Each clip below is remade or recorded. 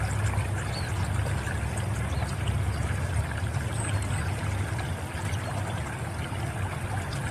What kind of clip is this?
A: recorded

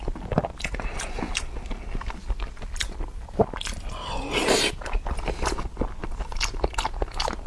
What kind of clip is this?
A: recorded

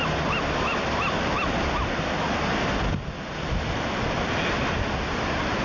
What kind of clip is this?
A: recorded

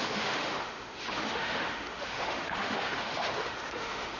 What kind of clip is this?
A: remade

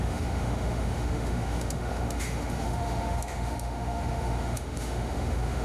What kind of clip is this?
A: remade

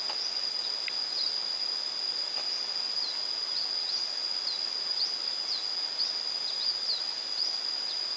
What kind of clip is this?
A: recorded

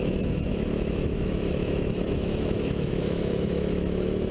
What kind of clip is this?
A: remade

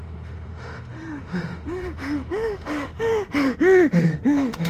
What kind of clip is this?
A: remade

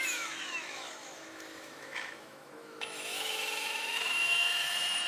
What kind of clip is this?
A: remade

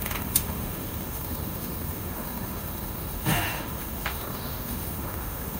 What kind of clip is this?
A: remade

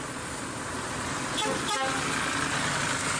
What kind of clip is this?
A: recorded